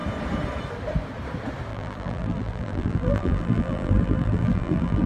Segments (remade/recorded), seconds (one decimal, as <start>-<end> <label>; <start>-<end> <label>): 0.0-1.7 recorded; 1.7-5.1 remade